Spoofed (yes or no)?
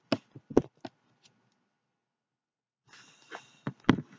no